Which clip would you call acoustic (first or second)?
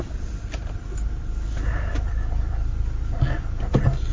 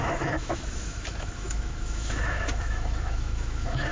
first